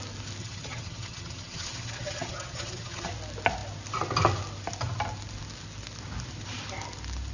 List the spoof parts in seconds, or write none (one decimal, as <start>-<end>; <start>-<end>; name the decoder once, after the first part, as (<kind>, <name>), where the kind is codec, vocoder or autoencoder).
0.4-3.1 (vocoder, HiFi-GAN)